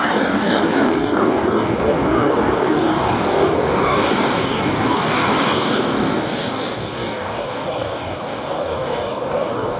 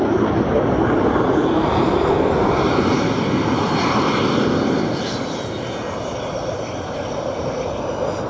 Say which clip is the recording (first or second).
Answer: second